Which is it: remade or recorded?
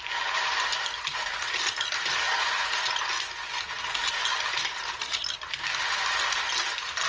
recorded